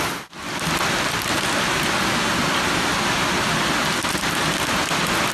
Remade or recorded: recorded